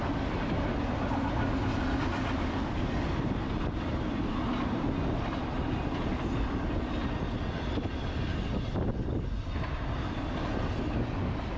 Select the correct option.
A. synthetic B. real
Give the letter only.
B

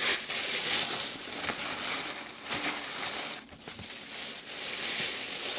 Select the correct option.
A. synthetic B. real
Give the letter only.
B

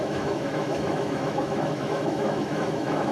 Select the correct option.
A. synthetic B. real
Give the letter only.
A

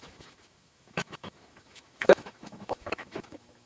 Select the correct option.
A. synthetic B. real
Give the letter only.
A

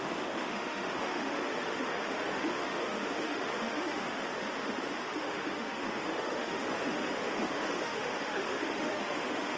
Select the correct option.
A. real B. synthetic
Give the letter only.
B